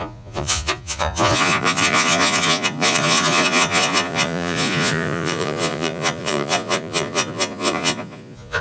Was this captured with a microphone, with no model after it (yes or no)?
no